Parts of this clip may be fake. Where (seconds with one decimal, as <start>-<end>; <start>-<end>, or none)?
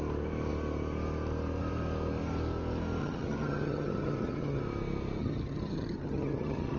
3.0-4.6; 5.2-6.8